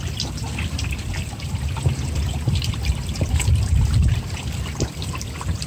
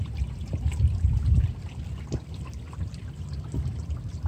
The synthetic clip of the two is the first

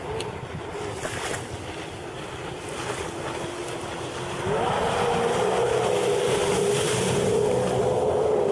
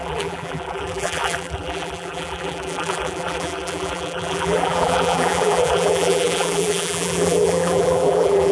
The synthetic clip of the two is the second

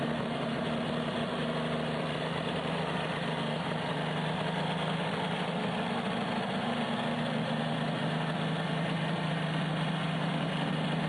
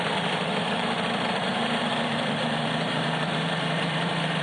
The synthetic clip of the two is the second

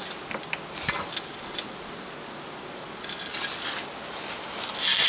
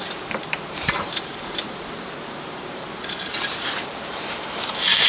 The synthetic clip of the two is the second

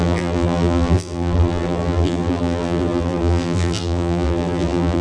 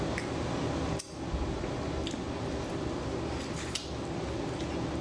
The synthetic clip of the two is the first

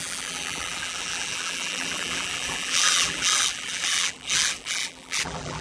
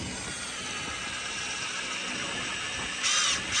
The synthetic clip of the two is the first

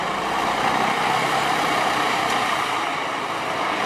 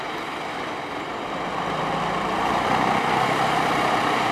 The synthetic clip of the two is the second